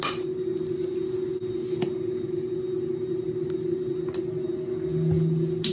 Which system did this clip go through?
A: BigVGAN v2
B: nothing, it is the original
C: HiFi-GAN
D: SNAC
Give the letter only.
B